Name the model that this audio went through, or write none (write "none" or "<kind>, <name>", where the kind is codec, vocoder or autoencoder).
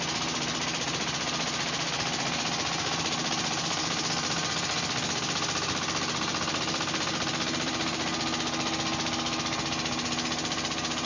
none